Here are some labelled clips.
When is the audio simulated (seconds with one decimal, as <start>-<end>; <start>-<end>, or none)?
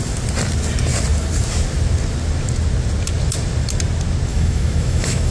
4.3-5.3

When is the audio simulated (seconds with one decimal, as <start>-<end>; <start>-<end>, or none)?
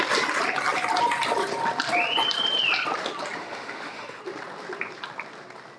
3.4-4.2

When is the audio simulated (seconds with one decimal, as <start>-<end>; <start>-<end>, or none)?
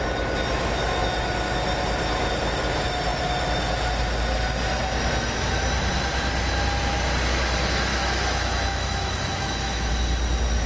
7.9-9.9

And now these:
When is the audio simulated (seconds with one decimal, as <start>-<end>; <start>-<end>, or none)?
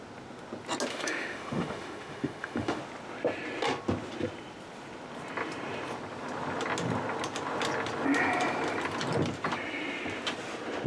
0.9-2.8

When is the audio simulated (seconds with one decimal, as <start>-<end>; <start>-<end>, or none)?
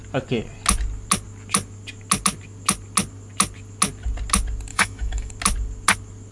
4.7-5.3